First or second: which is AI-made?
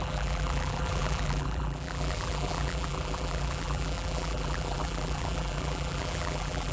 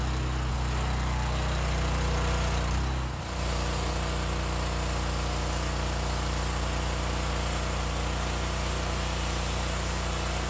first